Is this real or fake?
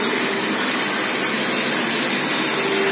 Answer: real